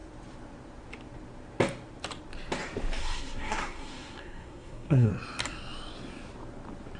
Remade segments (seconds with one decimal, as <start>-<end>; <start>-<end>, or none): 3.0-5.1